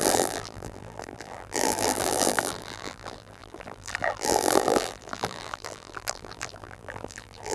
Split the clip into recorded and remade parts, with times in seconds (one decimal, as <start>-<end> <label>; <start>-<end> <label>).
0.0-7.5 remade